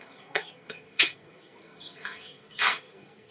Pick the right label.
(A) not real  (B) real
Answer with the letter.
A